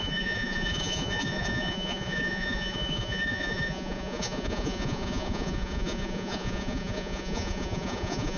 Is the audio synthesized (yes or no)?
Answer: yes